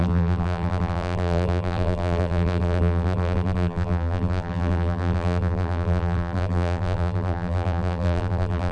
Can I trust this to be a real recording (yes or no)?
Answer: no